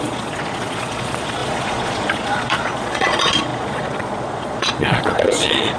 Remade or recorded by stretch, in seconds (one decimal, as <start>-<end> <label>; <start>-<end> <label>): 0.0-5.8 remade